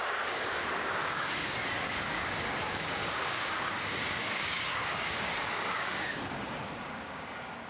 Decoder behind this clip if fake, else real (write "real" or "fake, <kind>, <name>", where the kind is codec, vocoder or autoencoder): fake, codec, DAC